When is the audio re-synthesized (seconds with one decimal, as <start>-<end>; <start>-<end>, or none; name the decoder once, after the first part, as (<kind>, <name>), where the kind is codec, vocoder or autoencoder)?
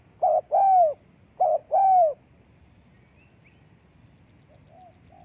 1.6-2.2 (vocoder, BigVGAN v2)